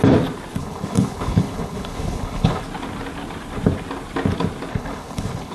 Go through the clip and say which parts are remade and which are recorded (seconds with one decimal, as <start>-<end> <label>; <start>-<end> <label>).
0.0-0.6 recorded; 0.6-2.6 remade; 2.6-4.7 recorded; 4.7-5.5 remade